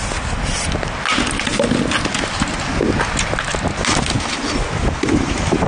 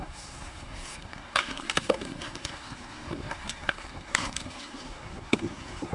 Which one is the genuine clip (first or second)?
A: first